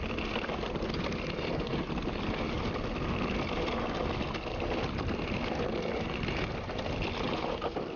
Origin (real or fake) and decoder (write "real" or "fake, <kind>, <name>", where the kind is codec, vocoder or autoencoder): real